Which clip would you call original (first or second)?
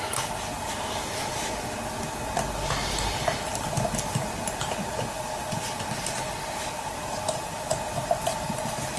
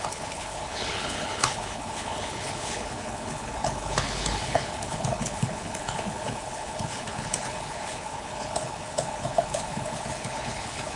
first